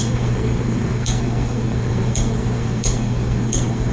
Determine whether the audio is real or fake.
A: fake